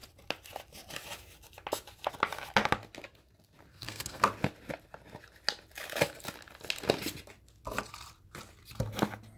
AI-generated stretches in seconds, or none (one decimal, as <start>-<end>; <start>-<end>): 3.7-4.2